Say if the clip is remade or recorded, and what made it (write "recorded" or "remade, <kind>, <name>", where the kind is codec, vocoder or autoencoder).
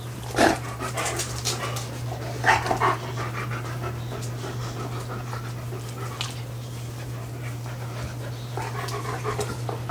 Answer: recorded